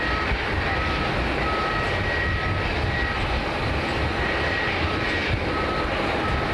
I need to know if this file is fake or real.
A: real